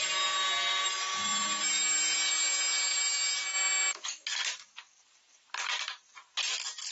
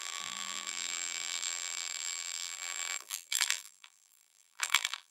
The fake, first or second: second